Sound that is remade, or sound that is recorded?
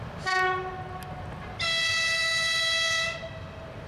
recorded